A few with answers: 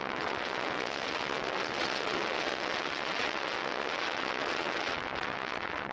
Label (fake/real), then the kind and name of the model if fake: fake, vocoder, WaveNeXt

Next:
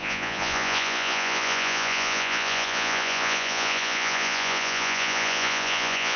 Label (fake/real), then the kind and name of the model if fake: fake, vocoder, Vocos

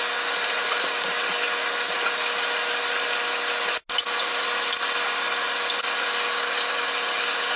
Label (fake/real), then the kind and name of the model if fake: real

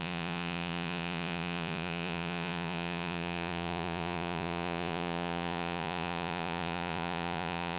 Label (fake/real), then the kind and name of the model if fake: fake, vocoder, Vocos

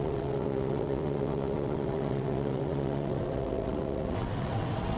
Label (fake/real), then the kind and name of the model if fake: fake, vocoder, WaveNeXt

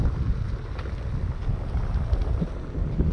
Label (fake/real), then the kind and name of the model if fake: real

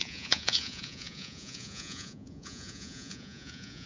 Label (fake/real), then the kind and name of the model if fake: fake, vocoder, Vocos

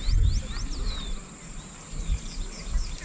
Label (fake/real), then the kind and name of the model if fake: real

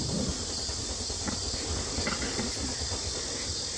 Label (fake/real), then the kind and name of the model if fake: real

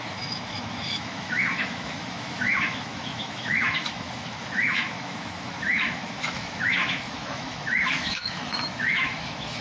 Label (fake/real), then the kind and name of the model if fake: fake, autoencoder, DAC-VAE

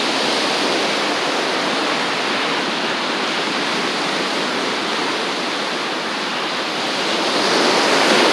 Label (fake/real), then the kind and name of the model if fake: real